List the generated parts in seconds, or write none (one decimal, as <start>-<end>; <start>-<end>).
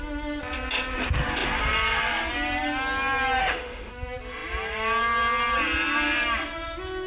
3.4-3.9